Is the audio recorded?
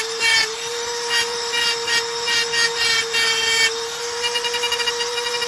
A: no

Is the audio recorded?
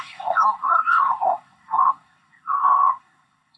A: no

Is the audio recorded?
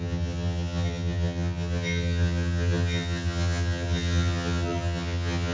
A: no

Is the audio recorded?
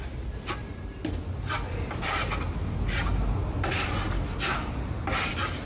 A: yes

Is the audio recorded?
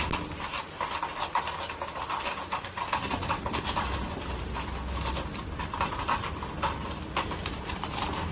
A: yes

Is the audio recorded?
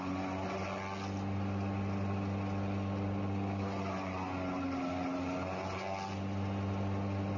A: yes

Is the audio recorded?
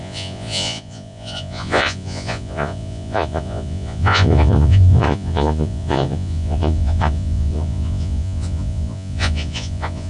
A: no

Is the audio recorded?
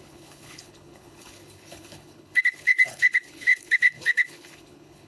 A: no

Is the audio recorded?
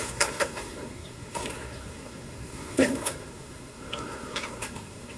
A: no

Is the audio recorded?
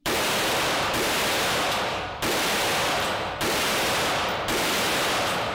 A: no